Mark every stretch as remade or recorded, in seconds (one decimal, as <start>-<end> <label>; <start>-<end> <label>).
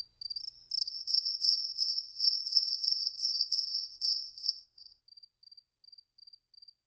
0.0-0.9 recorded; 0.9-5.0 remade; 5.0-6.9 recorded